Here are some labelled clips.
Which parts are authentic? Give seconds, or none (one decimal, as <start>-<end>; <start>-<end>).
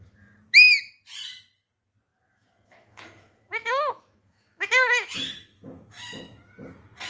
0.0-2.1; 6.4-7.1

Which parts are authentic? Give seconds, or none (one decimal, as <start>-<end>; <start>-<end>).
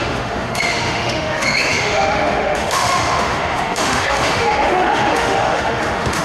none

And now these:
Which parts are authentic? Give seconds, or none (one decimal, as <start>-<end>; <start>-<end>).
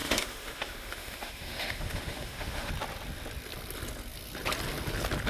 2.7-5.3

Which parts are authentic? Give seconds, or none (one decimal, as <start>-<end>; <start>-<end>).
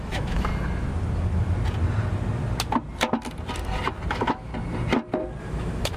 0.5-4.1; 4.5-5.4